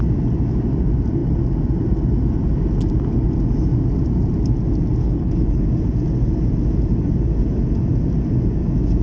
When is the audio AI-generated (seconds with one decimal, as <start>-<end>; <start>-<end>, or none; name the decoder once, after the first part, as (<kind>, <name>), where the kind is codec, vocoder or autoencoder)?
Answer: 5.0-5.6 (codec, HILCodec)

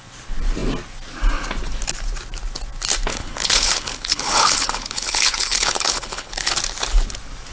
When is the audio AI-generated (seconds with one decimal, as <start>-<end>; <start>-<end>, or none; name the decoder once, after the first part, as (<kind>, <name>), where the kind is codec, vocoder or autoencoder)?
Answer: 3.1-6.5 (codec, HILCodec)

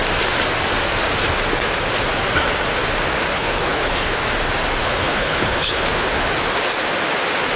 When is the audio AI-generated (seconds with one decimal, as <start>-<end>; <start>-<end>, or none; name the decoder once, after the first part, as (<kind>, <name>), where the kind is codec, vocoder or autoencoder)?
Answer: 3.3-4.2 (codec, HILCodec); 4.8-6.3

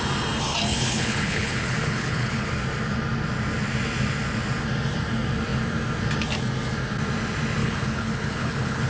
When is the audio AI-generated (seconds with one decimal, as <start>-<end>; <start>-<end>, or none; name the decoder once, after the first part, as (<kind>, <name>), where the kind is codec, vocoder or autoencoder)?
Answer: 0.7-2.5 (codec, HILCodec); 7.6-8.9

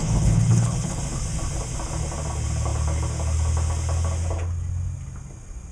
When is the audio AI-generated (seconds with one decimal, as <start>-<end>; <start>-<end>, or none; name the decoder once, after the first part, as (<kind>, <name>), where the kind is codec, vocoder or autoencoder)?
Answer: 0.0-1.0 (codec, HILCodec)

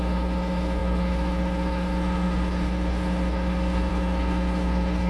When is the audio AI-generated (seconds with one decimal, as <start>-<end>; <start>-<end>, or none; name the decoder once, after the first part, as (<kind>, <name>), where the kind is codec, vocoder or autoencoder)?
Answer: 0.0-5.1 (codec, HILCodec)

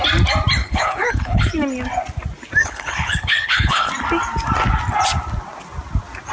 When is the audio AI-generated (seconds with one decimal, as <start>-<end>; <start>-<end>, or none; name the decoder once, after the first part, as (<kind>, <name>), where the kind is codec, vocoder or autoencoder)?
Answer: 0.6-1.5 (codec, HILCodec); 2.6-3.9

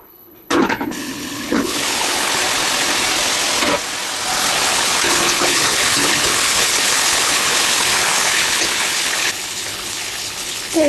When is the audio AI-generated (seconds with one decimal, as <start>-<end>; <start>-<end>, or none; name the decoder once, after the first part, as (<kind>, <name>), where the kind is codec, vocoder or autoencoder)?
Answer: 0.0-2.4 (codec, HILCodec); 4.5-10.9